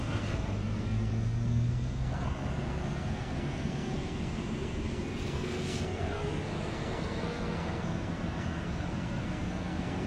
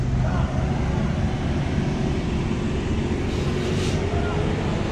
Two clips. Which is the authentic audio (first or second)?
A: second